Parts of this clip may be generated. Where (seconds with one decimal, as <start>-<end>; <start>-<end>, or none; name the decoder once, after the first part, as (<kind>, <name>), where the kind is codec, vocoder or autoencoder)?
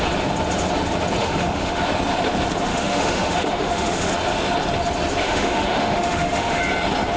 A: 1.2-1.8 (autoencoder, DAC-VAE); 2.7-4.1; 5.2-6.6